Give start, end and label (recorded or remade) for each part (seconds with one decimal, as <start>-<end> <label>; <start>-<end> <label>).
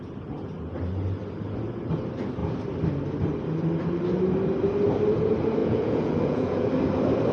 0.0-5.6 recorded; 5.6-6.7 remade; 6.7-7.3 recorded